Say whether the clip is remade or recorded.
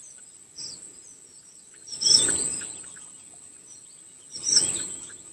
recorded